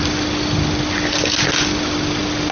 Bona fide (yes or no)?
yes